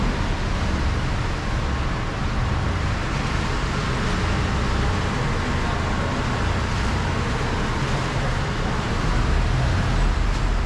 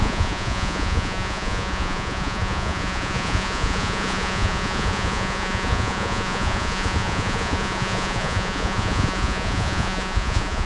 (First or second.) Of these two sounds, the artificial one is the second